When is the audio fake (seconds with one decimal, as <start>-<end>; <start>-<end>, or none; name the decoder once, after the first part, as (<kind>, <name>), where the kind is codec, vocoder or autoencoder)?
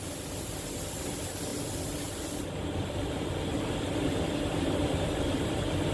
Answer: 0.0-5.9 (vocoder, BigVGAN v2)